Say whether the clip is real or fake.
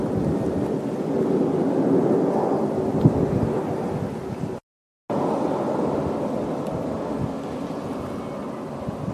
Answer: real